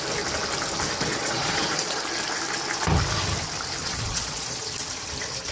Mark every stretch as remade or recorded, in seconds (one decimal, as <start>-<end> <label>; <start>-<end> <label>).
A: 0.0-1.1 recorded; 1.1-2.0 remade; 2.0-3.8 recorded; 3.8-4.6 remade; 4.6-5.5 recorded

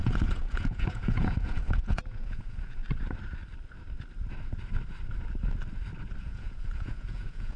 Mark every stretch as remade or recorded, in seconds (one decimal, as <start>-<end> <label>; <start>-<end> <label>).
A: 0.0-2.8 remade; 2.8-6.2 recorded; 6.2-7.6 remade

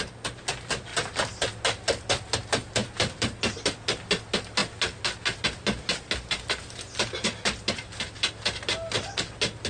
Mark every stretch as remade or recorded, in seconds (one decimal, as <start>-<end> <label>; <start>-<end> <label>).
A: 0.0-9.7 recorded

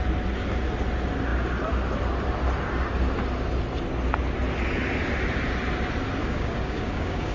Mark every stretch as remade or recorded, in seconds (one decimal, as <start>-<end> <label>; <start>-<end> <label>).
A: 0.0-6.2 recorded; 6.2-7.3 remade

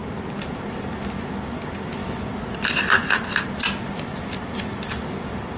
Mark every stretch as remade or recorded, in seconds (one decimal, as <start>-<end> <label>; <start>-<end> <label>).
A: 0.0-0.6 remade; 0.6-5.6 recorded